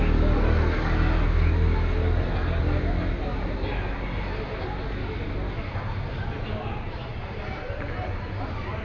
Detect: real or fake real